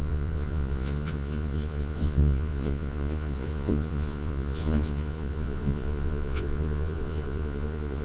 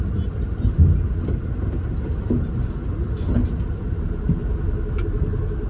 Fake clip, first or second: first